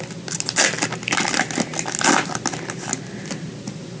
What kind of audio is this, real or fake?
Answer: real